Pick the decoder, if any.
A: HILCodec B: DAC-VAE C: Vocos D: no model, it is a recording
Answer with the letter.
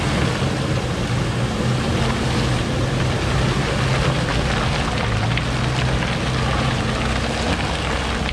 D